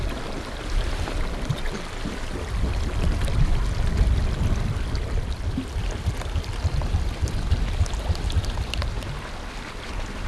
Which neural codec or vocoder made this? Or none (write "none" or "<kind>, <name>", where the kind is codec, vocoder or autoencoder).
none